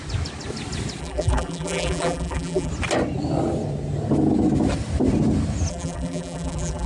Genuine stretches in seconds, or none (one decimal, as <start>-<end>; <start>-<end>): 0.0-1.0; 2.7-5.7